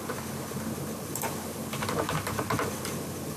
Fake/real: real